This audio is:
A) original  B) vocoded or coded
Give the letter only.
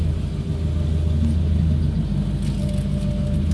A